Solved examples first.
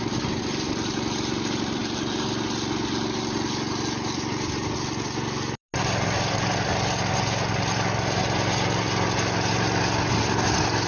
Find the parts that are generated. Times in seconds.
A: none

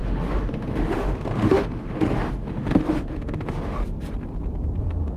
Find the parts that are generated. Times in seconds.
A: 0.0-3.8 (autoencoder, DAC-VAE); 4.8-5.2